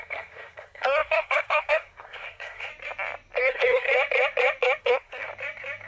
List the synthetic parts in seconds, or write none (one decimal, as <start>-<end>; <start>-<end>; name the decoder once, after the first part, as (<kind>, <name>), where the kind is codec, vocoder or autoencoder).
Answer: 0.0-2.7 (codec, SNAC); 3.4-3.9; 4.8-5.3